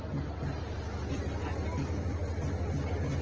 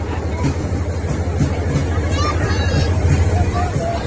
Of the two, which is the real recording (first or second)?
first